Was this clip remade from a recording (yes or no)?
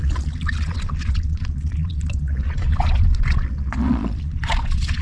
yes